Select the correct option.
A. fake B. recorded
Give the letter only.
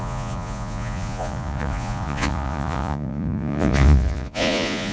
A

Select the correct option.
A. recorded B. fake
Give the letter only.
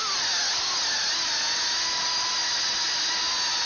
A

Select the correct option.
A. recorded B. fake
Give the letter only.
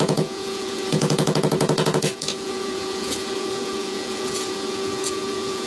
B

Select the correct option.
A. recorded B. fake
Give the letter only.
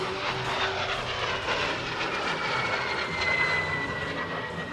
A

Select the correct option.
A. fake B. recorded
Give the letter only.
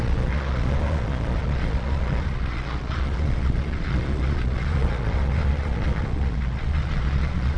A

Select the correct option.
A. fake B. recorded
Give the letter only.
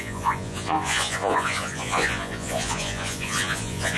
A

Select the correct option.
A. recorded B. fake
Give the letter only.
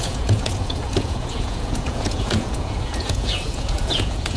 B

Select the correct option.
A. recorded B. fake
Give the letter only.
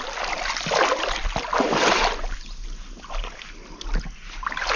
A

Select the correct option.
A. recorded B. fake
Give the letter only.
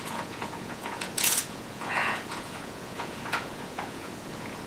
B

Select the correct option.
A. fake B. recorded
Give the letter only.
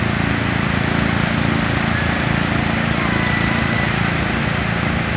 B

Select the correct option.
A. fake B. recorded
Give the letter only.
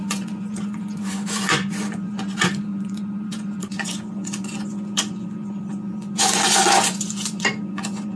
A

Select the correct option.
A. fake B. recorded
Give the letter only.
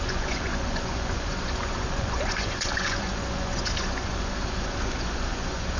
A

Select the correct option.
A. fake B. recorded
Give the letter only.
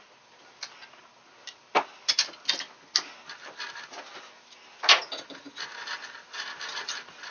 B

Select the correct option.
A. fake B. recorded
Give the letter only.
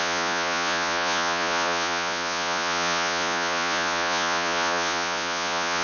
A